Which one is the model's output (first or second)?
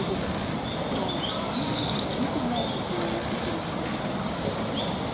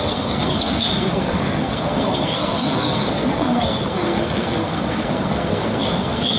second